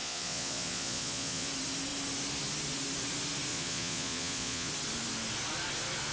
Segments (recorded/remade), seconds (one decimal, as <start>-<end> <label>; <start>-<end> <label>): 0.0-1.5 remade; 1.5-3.5 recorded; 3.5-4.7 remade; 4.7-6.1 recorded